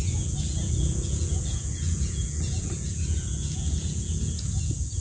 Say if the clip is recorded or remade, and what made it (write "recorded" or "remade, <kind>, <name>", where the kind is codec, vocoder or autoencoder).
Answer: remade, vocoder, Vocos